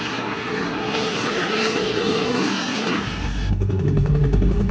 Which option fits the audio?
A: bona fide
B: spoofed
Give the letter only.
B